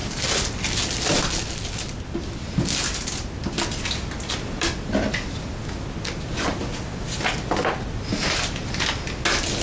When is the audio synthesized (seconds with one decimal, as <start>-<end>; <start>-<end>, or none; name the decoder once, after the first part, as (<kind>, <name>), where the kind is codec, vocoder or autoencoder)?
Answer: none